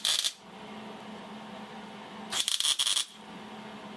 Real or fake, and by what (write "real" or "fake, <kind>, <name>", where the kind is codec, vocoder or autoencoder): real